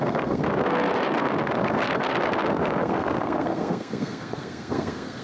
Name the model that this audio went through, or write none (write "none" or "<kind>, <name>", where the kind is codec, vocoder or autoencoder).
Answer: codec, SNAC